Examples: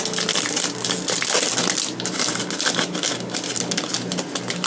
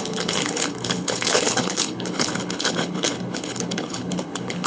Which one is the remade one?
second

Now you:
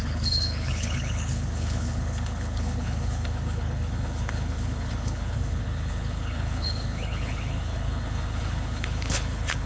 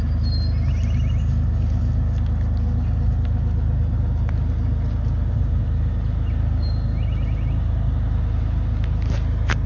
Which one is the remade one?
first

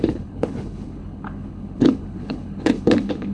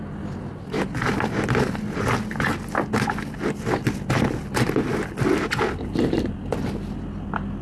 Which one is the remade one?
first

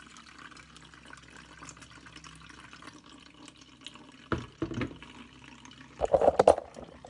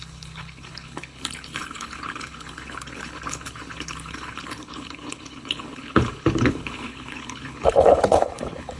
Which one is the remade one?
second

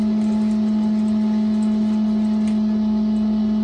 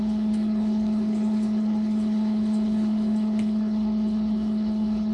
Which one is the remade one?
second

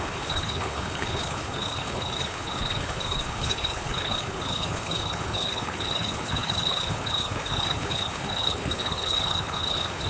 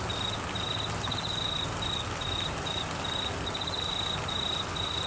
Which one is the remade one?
first